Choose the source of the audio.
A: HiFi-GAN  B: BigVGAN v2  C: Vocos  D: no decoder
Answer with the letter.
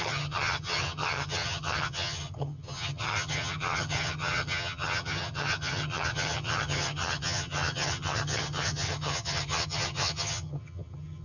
A